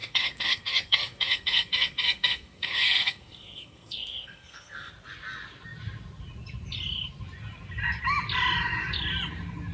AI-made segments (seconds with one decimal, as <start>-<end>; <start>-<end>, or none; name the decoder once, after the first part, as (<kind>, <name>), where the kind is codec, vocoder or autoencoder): 0.0-4.9 (codec, SNAC)